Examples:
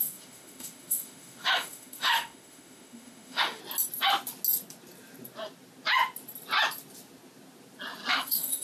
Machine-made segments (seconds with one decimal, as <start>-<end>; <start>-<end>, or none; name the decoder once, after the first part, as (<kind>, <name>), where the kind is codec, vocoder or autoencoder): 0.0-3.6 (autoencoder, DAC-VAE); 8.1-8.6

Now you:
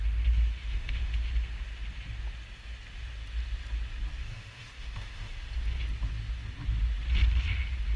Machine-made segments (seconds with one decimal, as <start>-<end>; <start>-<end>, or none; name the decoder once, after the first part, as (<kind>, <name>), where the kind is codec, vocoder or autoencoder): 0.6-1.3 (autoencoder, DAC-VAE); 4.2-5.5

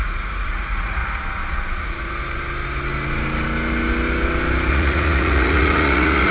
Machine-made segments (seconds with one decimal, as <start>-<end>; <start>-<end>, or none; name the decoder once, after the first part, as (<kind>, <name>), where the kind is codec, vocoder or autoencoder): 0.0-1.0 (vocoder, Vocos); 4.7-6.3